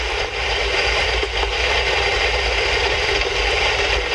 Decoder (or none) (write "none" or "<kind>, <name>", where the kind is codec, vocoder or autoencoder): vocoder, BigVGAN v2